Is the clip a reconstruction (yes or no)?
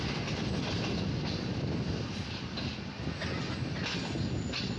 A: no